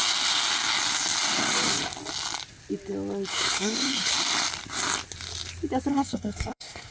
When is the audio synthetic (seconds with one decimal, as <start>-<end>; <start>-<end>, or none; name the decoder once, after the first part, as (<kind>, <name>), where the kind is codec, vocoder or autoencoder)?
3.3-4.1 (codec, SNAC); 5.9-6.9